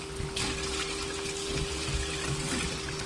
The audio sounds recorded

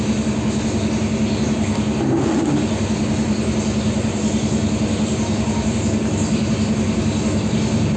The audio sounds recorded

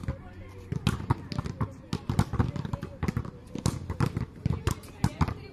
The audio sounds recorded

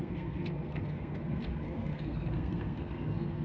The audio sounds remade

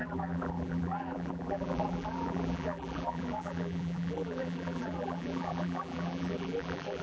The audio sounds remade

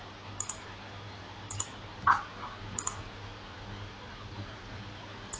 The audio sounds recorded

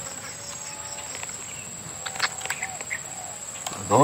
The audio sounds recorded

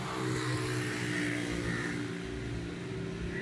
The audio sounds recorded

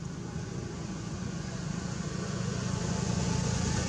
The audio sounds remade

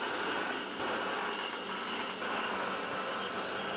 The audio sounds recorded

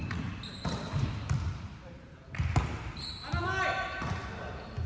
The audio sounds recorded